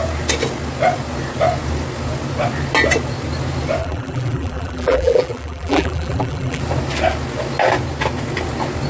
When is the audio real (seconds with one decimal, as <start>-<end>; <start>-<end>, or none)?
0.0-3.8; 6.6-8.9